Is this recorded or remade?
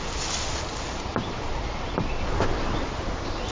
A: recorded